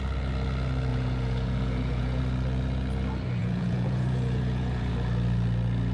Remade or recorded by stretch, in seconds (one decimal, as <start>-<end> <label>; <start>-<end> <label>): 0.0-0.9 recorded; 0.9-2.2 remade; 2.2-3.4 recorded; 3.4-4.9 remade; 4.9-5.9 recorded